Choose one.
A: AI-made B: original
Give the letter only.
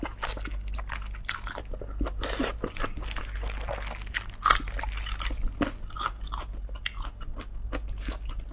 B